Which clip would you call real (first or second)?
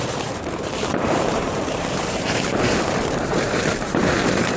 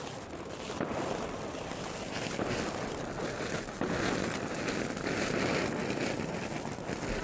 second